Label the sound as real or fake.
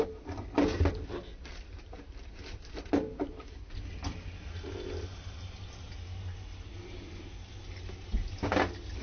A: real